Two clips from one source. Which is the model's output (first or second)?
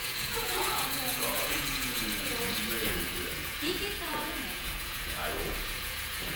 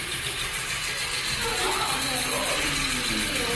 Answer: first